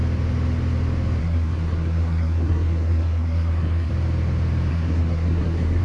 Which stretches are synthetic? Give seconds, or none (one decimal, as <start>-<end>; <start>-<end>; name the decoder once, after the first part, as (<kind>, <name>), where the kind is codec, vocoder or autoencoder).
1.2-3.9 (codec, SNAC); 4.7-5.8